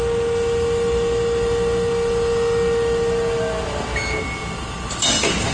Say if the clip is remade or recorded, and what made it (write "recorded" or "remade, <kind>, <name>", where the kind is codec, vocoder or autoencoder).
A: recorded